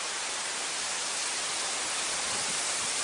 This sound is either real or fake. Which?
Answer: real